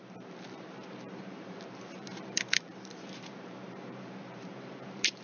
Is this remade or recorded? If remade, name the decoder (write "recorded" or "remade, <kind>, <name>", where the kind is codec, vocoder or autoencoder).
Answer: remade, vocoder, BigVGAN v2